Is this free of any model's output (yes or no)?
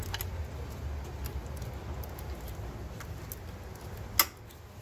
yes